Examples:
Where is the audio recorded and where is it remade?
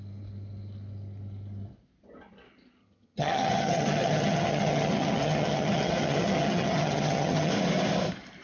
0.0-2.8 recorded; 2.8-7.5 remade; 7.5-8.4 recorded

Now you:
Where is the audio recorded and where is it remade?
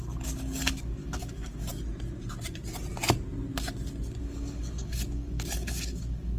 0.0-1.7 remade; 1.7-4.2 recorded; 4.2-6.4 remade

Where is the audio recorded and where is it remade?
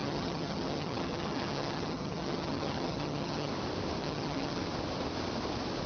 0.0-3.5 remade; 3.5-4.0 recorded; 4.0-4.6 remade; 4.6-5.9 recorded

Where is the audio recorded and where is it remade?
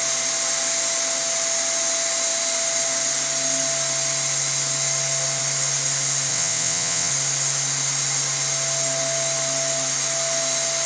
0.0-6.3 recorded; 6.3-7.1 remade; 7.1-10.9 recorded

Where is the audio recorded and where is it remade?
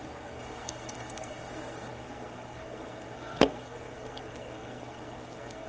0.0-5.7 remade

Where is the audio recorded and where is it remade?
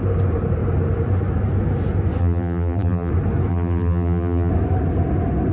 0.0-2.2 recorded; 2.2-3.1 remade; 3.1-3.5 recorded; 3.5-4.5 remade; 4.5-5.5 recorded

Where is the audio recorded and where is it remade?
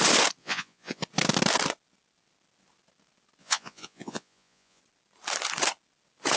0.0-0.4 recorded; 0.4-1.0 remade; 1.0-3.4 recorded; 3.4-4.8 remade; 4.8-6.4 recorded